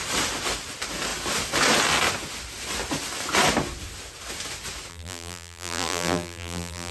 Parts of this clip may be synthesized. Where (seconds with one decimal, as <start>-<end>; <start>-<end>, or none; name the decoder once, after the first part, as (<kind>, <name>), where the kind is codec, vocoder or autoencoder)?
4.9-6.9 (vocoder, BigVGAN v2)